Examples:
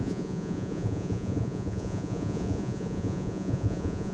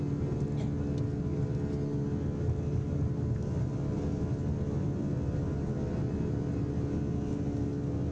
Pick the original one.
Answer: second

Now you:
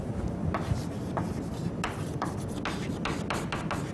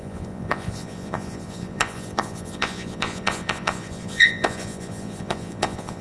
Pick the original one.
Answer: first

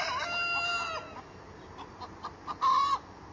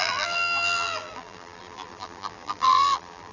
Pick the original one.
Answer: first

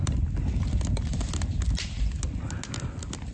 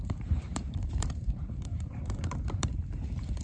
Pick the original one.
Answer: first